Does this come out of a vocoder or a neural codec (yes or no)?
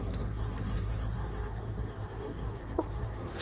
yes